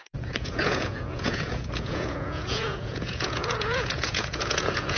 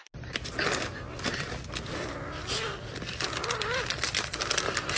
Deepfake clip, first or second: first